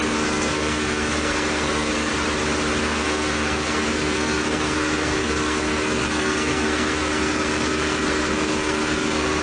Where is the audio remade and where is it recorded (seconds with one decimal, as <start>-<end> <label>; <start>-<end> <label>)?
0.0-2.1 remade; 2.1-2.8 recorded; 2.8-9.4 remade